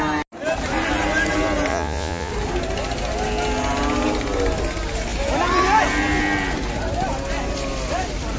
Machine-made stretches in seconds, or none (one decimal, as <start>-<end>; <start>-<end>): 1.7-2.3